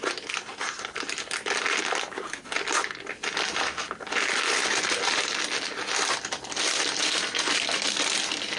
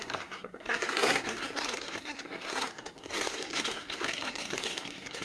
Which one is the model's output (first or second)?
second